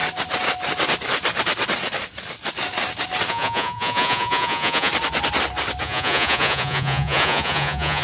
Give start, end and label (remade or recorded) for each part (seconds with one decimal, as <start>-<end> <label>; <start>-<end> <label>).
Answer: 0.0-3.3 recorded; 3.3-4.9 remade; 4.9-5.8 recorded; 5.8-8.0 remade